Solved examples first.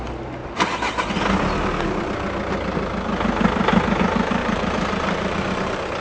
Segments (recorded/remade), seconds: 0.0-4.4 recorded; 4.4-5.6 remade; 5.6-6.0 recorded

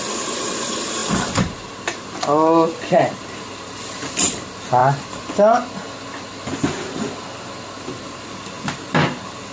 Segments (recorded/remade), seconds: 0.0-4.8 remade; 4.8-7.8 recorded; 7.8-9.5 remade